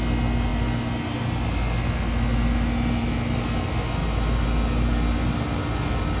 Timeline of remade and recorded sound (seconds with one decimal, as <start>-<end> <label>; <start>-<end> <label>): 0.0-6.2 recorded